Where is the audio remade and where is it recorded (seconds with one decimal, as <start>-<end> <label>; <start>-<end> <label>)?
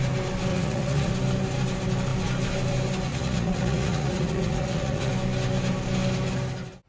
0.0-0.5 recorded; 0.5-1.1 remade; 1.1-3.1 recorded; 3.1-5.1 remade; 5.1-6.9 recorded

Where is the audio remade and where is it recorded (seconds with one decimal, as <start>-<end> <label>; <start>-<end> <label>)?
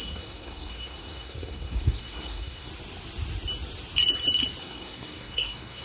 0.0-2.7 remade; 2.7-4.6 recorded; 4.6-5.8 remade